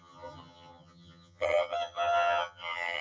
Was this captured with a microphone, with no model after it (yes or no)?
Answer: no